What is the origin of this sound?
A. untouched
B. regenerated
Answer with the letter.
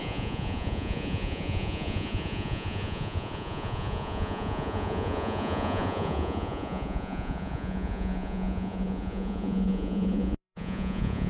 B